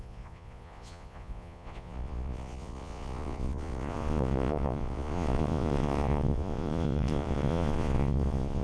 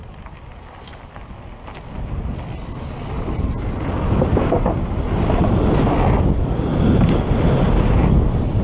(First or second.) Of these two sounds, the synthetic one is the first